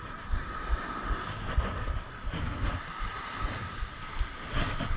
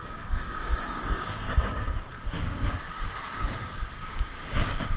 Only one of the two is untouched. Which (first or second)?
first